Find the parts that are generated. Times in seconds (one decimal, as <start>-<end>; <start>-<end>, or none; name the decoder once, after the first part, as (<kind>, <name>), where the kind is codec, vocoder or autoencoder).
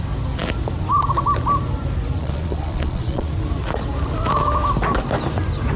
2.2-3.3 (vocoder, Vocos)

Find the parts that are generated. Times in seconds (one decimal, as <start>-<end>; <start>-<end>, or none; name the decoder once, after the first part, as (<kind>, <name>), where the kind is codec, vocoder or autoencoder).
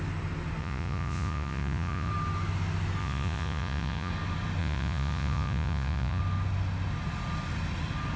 0.6-2.1 (vocoder, Vocos); 3.0-4.1; 4.6-6.2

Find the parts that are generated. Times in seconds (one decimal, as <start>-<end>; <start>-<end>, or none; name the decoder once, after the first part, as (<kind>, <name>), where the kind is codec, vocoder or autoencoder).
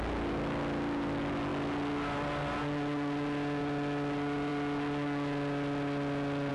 none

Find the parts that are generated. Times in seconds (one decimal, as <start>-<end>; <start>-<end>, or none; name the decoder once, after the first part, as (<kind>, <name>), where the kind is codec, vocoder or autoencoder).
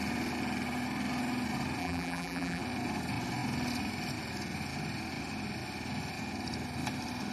1.8-2.6 (vocoder, BigVGAN v2)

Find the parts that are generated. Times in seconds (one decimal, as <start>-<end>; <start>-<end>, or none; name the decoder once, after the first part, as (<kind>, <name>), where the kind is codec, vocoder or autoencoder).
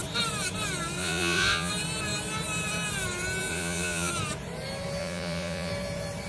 1.0-1.7 (vocoder, Vocos); 3.5-4.1; 5.0-5.7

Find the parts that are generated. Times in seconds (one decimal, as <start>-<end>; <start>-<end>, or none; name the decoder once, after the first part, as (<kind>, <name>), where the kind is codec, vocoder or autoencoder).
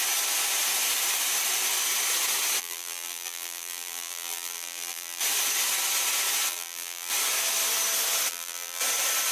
2.6-5.2 (vocoder, BigVGAN v2); 6.5-7.1; 8.3-8.8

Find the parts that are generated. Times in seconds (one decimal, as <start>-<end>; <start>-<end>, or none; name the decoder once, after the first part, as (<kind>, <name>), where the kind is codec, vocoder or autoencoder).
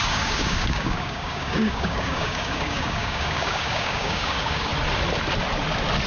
0.0-4.7 (codec, DAC)